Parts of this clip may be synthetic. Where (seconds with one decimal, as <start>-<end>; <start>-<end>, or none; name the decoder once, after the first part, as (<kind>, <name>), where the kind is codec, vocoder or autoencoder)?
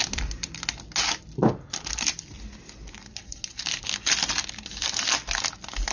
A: none